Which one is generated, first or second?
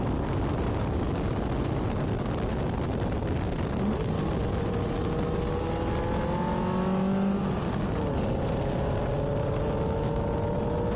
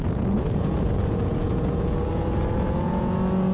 second